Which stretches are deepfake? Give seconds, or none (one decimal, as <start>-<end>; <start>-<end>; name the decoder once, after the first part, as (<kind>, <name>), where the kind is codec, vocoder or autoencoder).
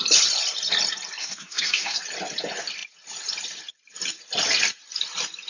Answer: 1.2-2.0 (codec, SNAC)